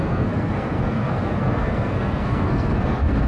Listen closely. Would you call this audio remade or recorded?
remade